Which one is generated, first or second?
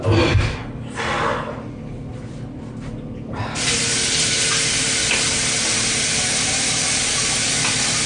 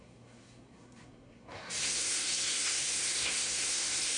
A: second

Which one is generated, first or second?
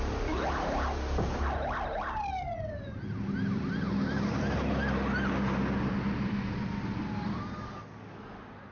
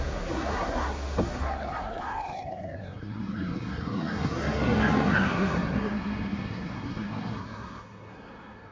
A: second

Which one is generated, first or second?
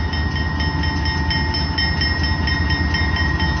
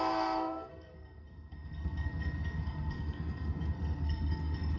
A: second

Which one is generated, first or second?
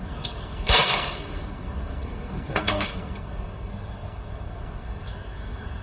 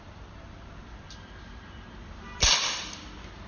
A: first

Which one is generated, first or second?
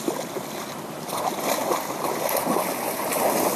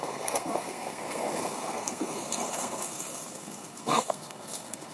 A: second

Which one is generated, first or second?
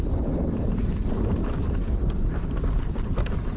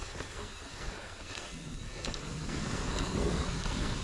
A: second